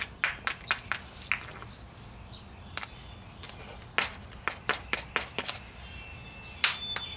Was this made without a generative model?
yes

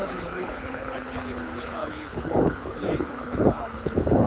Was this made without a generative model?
no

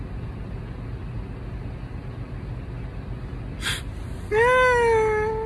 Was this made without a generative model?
yes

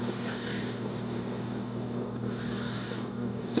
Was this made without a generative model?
no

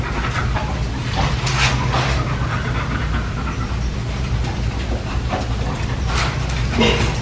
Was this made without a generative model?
yes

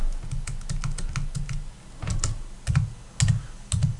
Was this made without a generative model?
yes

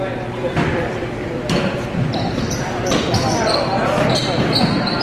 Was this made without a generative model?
no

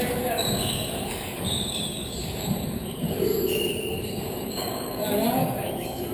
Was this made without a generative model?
no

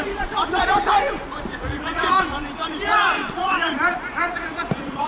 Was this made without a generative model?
no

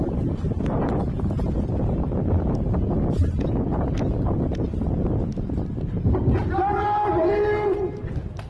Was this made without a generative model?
yes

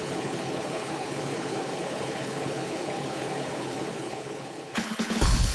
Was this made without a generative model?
no